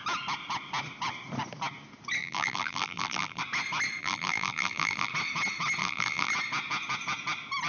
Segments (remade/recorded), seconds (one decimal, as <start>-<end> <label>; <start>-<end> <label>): 0.0-2.2 recorded; 2.2-3.4 remade; 3.4-4.0 recorded; 4.0-5.1 remade; 5.1-5.8 recorded; 5.8-6.3 remade; 6.3-7.7 recorded

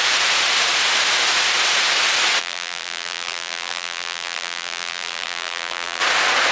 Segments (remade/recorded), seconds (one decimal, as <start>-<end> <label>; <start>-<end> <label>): 0.0-2.4 recorded; 2.4-6.0 remade; 6.0-6.5 recorded

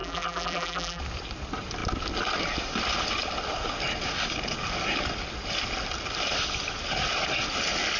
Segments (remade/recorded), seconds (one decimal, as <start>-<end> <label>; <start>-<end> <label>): 0.0-1.0 remade; 1.0-8.0 recorded

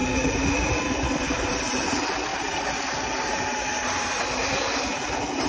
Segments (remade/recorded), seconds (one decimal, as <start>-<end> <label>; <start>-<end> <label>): 0.0-5.5 recorded

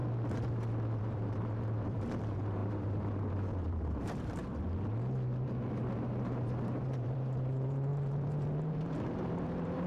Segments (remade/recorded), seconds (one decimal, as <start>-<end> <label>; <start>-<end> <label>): 0.0-1.0 recorded; 1.0-4.4 remade; 4.4-5.8 recorded; 5.8-9.9 remade